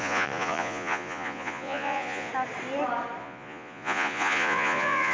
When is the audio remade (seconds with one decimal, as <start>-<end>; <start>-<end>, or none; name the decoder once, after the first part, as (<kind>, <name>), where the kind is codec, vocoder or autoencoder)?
0.0-2.3 (vocoder, Vocos); 3.2-5.1